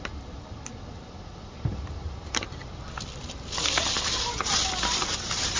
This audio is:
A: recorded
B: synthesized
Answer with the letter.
B